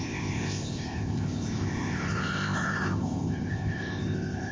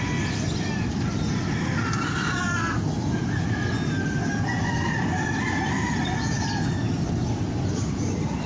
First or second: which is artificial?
first